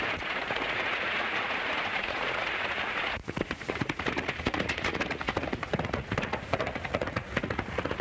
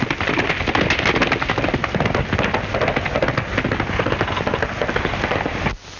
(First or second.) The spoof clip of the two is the first